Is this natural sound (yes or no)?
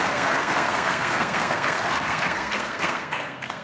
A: no